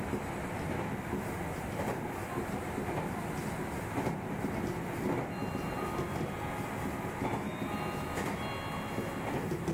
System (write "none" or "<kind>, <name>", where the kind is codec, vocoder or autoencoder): none